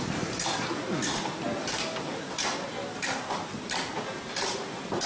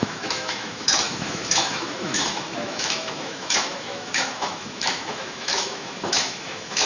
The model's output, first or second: second